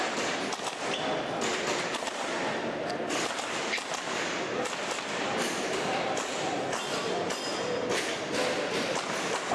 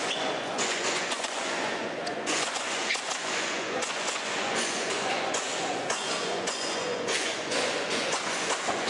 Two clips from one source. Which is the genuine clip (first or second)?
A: first